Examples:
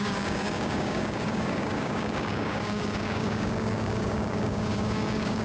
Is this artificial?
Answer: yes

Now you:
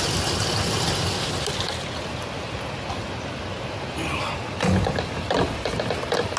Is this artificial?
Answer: no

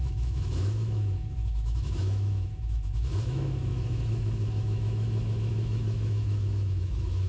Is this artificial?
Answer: yes